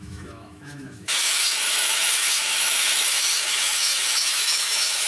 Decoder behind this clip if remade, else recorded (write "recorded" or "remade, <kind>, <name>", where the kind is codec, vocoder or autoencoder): remade, autoencoder, DAC-VAE